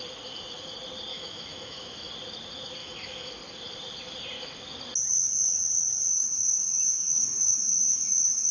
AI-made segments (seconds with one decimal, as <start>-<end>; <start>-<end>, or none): 1.1-2.1; 2.8-3.3; 6.1-8.5